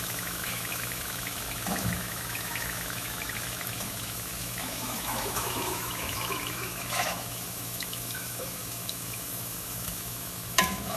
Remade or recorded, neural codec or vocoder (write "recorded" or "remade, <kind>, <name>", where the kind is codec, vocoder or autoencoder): remade, autoencoder, DAC-VAE